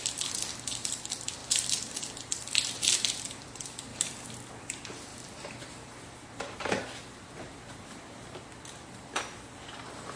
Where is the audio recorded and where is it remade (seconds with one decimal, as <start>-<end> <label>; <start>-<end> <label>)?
0.0-1.4 remade; 1.4-2.7 recorded; 2.7-3.9 remade; 3.9-4.5 recorded; 4.5-10.2 remade